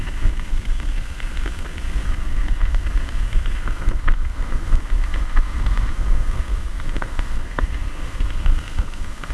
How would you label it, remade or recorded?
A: remade